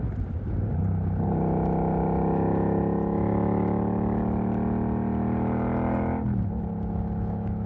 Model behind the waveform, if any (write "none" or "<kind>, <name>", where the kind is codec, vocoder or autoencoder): none